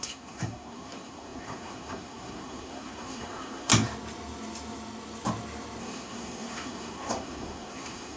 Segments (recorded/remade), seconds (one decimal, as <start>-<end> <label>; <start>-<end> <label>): 0.0-3.7 remade; 3.7-5.8 recorded; 5.8-8.2 remade